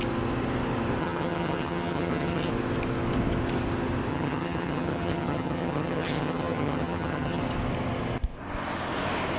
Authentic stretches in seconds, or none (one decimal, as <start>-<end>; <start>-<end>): 0.0-1.0; 2.5-4.1; 7.4-9.4

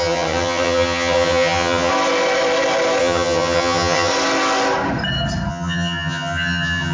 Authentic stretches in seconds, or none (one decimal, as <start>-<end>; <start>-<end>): 1.9-3.0; 4.1-5.5

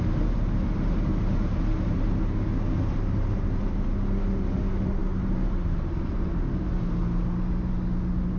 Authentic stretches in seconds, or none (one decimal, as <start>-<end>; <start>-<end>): 0.0-8.4

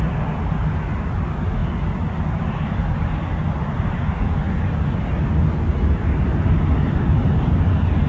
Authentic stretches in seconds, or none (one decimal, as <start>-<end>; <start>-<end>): 0.0-8.1

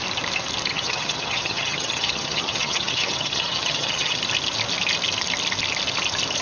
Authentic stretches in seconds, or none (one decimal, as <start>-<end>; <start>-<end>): 0.0-0.7; 4.2-6.4

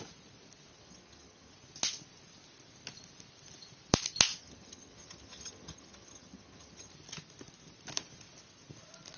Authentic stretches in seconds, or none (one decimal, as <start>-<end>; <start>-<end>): 0.0-0.7; 1.5-4.4; 6.9-9.2